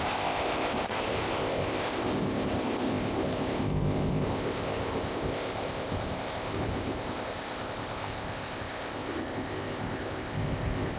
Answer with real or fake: fake